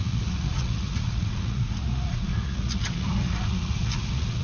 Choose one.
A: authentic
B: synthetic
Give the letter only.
B